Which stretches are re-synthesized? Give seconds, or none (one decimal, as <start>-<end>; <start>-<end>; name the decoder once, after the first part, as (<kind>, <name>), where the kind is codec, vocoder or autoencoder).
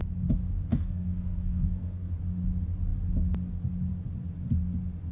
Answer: 0.7-2.1 (codec, SNAC)